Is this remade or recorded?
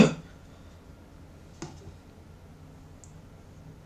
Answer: recorded